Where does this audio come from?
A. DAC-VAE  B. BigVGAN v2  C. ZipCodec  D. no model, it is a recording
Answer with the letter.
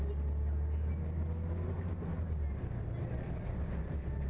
D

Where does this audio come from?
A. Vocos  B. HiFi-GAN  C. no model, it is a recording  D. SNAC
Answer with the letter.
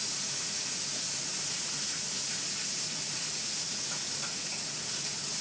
A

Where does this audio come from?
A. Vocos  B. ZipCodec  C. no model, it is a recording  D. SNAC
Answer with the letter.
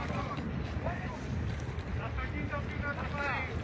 C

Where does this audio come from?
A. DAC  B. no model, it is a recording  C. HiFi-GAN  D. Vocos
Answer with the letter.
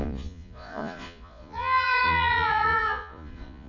D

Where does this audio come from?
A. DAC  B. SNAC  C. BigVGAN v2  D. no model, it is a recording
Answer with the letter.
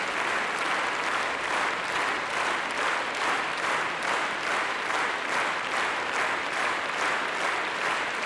D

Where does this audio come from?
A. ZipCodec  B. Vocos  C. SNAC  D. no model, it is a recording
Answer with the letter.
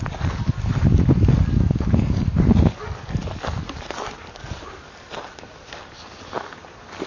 D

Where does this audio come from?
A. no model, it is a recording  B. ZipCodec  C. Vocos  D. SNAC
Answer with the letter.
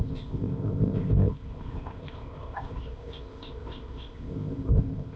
B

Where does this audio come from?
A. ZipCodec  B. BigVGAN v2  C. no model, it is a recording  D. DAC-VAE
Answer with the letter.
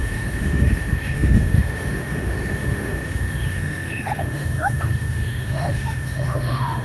D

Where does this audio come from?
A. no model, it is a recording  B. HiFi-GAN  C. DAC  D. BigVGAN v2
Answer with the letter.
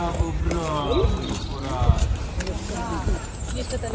D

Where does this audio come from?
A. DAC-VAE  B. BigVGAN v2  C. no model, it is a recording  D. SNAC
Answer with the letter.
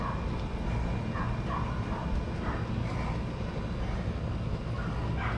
C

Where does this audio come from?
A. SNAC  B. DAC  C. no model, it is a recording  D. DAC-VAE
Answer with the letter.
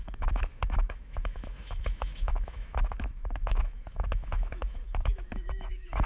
D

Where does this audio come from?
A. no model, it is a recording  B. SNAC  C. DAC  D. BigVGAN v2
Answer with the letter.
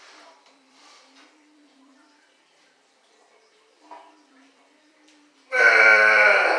D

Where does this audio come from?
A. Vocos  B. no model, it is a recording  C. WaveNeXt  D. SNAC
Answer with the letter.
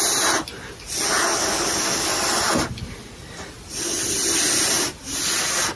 B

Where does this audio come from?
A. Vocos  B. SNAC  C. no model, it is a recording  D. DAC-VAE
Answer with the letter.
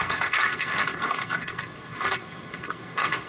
B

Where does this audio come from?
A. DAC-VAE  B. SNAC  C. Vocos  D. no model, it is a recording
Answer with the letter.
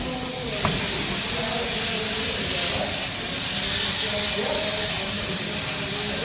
D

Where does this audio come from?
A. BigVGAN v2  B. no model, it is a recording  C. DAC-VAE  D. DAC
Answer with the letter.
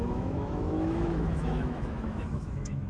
C